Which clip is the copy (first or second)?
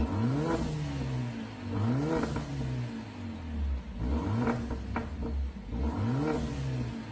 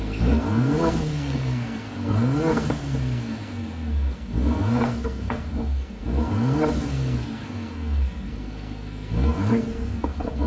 second